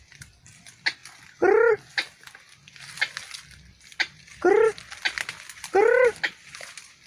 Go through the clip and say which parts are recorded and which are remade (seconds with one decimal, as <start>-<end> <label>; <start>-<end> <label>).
0.0-7.1 recorded

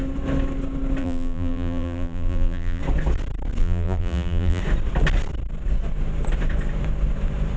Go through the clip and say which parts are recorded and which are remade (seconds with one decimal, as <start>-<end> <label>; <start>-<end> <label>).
0.0-1.0 recorded; 1.0-2.8 remade; 2.8-3.6 recorded; 3.6-4.6 remade; 4.6-7.6 recorded

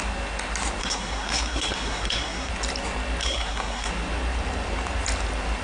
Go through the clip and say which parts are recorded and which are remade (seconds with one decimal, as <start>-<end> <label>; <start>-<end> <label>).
0.0-0.8 recorded; 0.8-2.5 remade; 2.5-3.2 recorded; 3.2-3.9 remade; 3.9-5.6 recorded